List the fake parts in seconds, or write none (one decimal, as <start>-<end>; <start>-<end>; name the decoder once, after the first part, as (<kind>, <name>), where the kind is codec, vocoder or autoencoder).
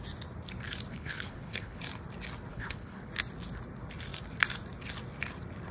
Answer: 0.9-1.8 (codec, HILCodec); 2.5-3.1